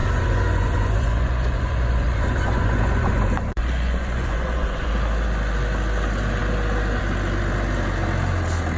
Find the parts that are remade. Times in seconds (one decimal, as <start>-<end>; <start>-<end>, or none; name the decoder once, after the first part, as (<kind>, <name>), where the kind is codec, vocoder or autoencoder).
0.0-4.9 (vocoder, Vocos)